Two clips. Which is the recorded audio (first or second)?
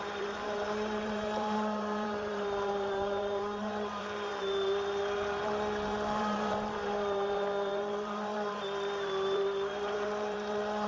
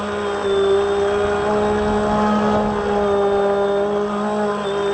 second